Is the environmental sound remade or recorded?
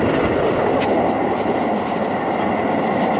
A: recorded